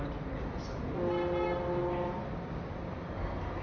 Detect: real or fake real